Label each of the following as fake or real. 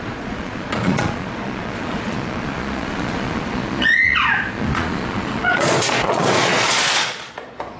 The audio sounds fake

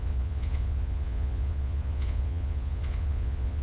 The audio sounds fake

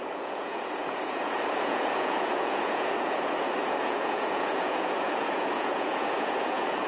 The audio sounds fake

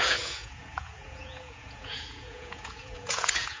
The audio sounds fake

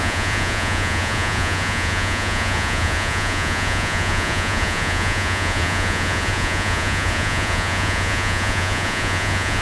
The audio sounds fake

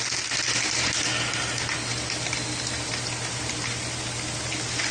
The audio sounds real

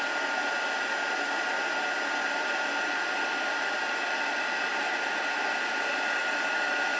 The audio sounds real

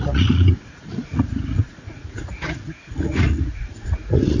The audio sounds fake